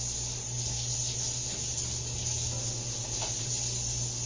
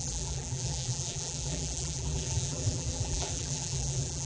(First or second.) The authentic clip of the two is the first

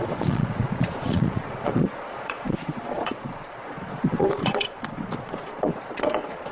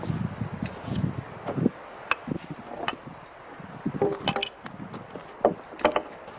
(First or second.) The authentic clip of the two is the second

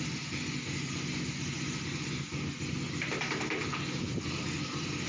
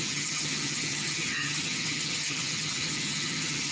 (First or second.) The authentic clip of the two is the first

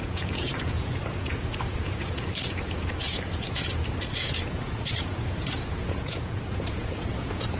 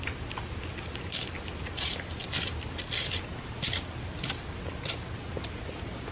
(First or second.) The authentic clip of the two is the second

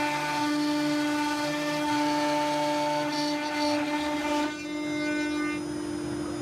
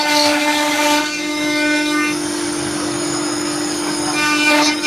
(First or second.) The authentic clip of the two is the first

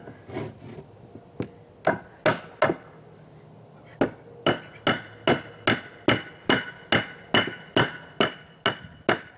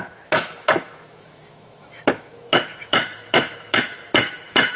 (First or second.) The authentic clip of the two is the first